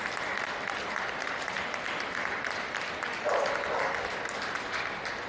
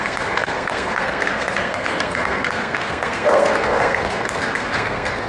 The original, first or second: first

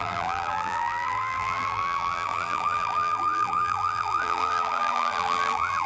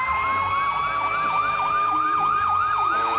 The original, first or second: second